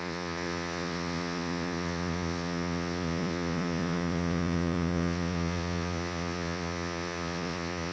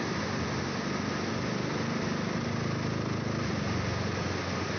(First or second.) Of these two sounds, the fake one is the first